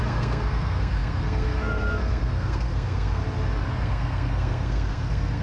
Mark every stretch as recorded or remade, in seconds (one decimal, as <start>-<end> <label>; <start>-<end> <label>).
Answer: 0.0-3.2 remade; 3.2-3.7 recorded; 3.7-5.4 remade